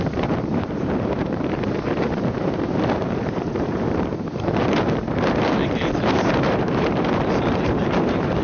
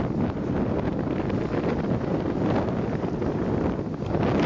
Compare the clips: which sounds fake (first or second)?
first